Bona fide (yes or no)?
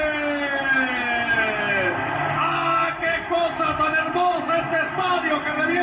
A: yes